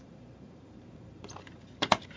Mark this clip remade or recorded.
remade